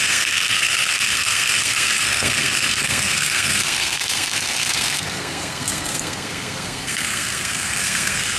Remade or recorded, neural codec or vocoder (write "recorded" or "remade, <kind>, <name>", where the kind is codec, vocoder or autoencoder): remade, codec, SNAC